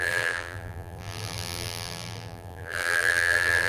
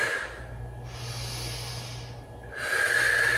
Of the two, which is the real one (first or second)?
second